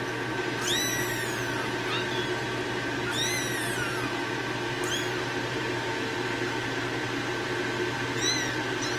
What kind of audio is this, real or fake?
real